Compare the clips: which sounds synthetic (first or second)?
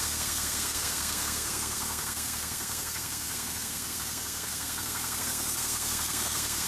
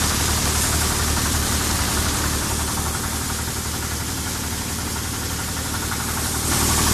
first